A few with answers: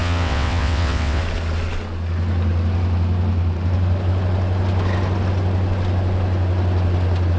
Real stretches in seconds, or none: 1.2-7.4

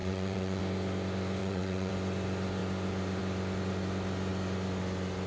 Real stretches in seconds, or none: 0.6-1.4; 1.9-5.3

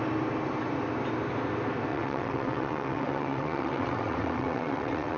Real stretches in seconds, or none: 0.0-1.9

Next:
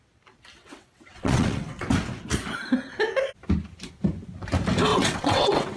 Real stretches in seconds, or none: 0.0-0.6; 1.9-4.9

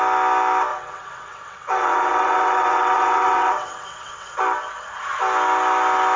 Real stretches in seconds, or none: 0.0-0.7; 4.4-6.2

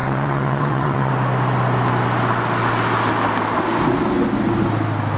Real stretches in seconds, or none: 1.1-5.2

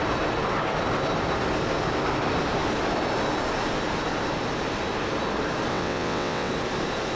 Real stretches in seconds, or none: 0.0-5.7; 6.5-7.2

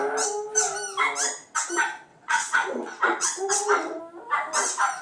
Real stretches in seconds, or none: 0.0-2.1; 4.0-5.0